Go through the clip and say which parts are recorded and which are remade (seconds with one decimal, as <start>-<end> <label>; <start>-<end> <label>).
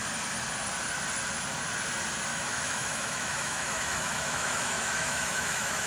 0.0-2.3 recorded; 2.3-5.9 remade